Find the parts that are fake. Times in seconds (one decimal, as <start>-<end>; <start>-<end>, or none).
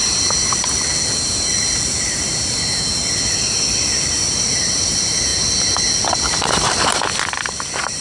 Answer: none